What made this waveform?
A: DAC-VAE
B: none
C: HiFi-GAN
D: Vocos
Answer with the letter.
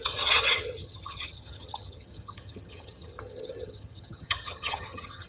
C